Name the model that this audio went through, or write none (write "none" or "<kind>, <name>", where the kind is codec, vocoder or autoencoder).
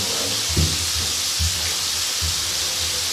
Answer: none